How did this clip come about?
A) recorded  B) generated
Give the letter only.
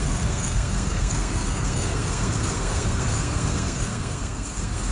B